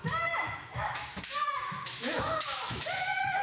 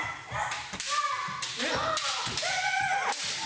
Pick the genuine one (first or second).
second